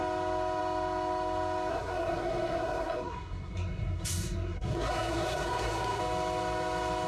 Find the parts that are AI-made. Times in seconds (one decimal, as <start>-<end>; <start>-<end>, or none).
1.7-6.0